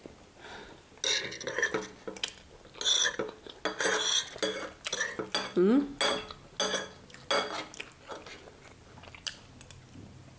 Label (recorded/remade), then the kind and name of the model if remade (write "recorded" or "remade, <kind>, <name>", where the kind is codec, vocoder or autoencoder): recorded